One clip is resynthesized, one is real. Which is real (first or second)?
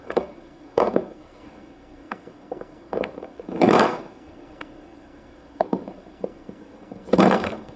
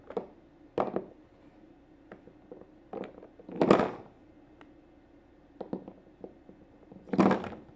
second